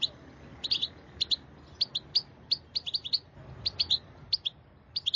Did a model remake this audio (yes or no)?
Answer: no